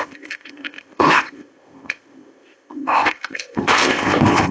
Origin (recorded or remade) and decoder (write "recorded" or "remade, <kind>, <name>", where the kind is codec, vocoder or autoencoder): remade, codec, ZipCodec